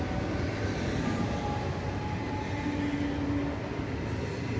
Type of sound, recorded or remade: recorded